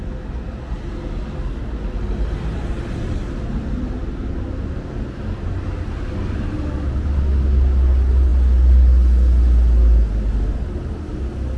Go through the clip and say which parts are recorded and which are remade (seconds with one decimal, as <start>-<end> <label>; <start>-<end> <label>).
0.0-11.6 recorded